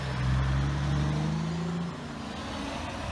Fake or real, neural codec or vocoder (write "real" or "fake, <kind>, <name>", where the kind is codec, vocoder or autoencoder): real